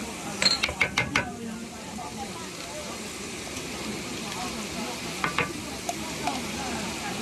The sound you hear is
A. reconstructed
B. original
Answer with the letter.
B